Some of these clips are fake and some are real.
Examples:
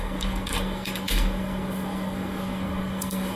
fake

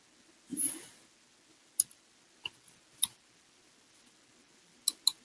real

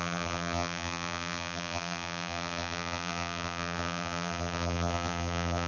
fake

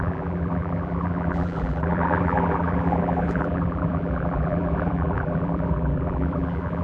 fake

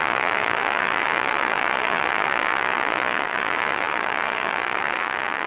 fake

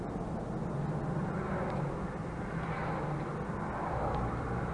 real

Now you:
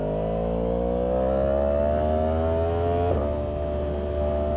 real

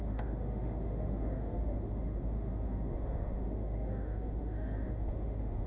fake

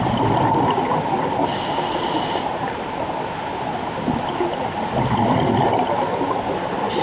real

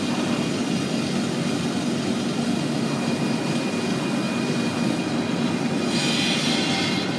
real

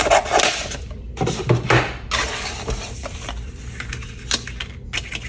real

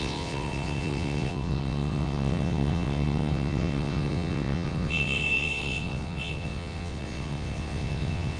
fake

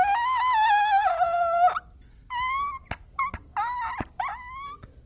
real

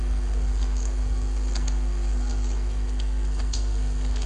fake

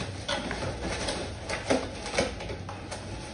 real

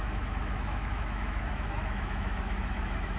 fake